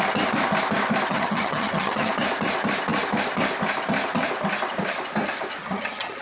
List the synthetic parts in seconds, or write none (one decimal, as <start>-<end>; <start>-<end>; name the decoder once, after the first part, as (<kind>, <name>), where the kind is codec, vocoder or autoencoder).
1.1-2.1 (vocoder, HiFi-GAN); 5.6-6.2

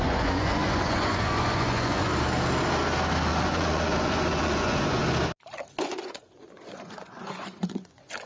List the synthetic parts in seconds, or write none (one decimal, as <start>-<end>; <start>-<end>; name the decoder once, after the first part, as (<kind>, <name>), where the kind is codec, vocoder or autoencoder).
0.0-2.1 (vocoder, Vocos); 3.3-5.0; 5.8-8.3

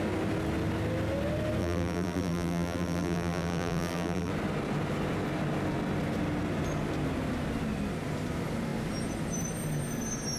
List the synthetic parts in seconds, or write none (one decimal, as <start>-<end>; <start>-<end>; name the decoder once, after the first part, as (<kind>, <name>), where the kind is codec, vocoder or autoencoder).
1.6-4.3 (vocoder, BigVGAN v2)

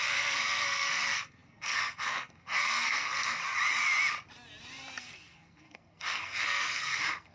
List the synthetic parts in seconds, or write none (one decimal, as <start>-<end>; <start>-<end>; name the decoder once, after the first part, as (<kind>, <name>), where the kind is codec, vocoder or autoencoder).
0.0-3.4 (codec, SNAC); 5.0-7.3

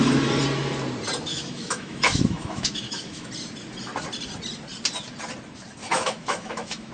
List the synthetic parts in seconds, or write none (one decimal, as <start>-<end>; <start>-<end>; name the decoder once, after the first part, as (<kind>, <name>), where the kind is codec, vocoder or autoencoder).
1.3-3.3 (autoencoder, DAC-VAE); 5.8-6.9

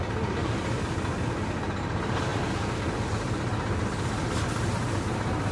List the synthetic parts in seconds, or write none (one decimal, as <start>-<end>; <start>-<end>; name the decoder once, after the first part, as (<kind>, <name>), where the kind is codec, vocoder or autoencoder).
none

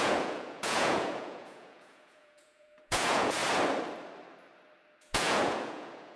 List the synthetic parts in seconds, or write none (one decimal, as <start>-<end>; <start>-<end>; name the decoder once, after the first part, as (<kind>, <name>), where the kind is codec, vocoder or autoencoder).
0.0-3.4 (vocoder, Vocos); 5.0-6.2